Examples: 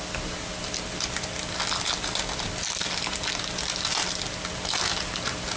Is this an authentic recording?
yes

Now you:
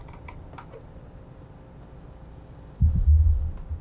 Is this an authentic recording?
yes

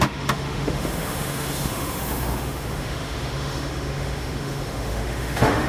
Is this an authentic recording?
no